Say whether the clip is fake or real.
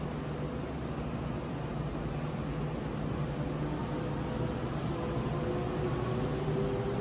real